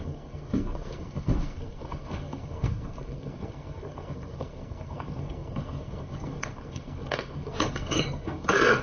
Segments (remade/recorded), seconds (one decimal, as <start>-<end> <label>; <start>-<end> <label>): 0.0-8.8 remade